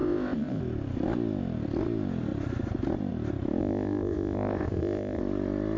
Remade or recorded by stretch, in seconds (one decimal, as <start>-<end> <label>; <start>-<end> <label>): 0.0-0.6 remade; 0.6-3.6 recorded; 3.6-5.2 remade; 5.2-5.8 recorded